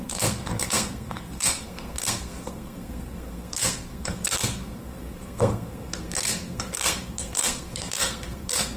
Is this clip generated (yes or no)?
yes